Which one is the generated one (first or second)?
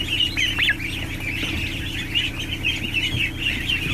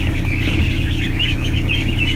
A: second